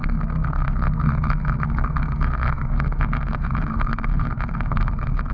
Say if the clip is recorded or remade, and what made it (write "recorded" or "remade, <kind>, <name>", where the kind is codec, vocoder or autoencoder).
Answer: remade, codec, SNAC